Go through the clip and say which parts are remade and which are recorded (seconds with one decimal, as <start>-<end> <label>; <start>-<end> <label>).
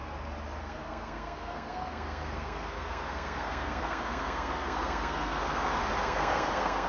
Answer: 0.0-0.6 recorded; 0.6-6.9 remade